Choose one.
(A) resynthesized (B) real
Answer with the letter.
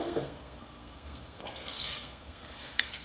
A